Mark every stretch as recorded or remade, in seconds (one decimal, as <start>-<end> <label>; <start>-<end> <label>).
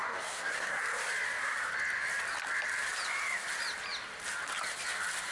0.0-0.8 remade; 0.8-5.3 recorded